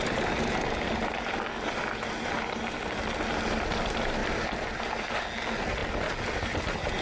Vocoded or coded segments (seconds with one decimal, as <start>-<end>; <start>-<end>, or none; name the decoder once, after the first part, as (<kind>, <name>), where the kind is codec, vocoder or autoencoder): 4.2-5.2 (vocoder, BigVGAN v2)